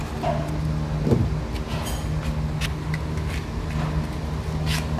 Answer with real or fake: real